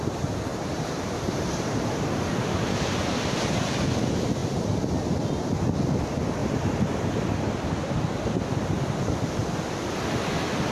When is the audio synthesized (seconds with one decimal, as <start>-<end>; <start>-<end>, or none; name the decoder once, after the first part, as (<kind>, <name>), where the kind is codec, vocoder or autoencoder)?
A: 0.5-2.3 (vocoder, BigVGAN v2); 6.4-7.3